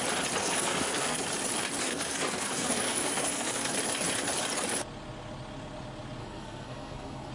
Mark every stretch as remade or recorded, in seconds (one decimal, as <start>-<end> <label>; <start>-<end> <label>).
0.0-0.4 recorded; 0.4-1.2 remade; 1.2-1.8 recorded; 1.8-3.7 remade; 3.7-6.2 recorded; 6.2-7.3 remade